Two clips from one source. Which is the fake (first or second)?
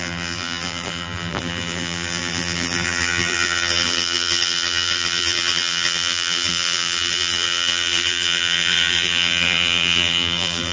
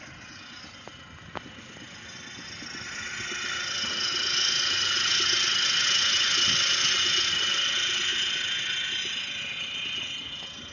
first